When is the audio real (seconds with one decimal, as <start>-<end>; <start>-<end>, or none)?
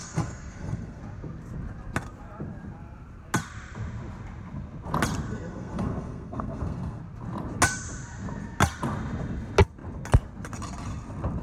1.0-5.3; 7.0-11.4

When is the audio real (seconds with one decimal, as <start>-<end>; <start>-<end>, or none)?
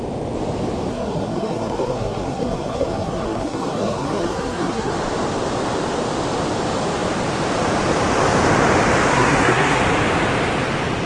0.0-0.9; 4.9-9.1; 9.8-11.1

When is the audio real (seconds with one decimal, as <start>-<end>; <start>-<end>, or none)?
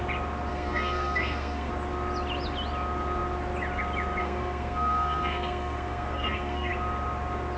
0.0-0.5; 1.7-4.2; 6.7-7.6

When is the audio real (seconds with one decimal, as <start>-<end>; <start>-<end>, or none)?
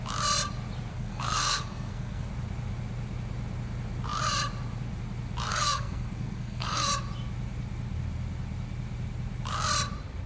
0.0-0.9; 2.3-5.5; 6.9-10.3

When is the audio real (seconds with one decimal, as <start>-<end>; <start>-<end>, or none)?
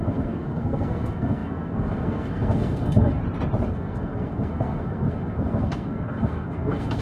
3.2-3.7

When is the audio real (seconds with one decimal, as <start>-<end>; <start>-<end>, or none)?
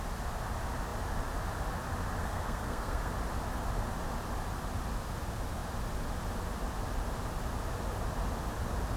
0.0-2.2; 3.1-9.0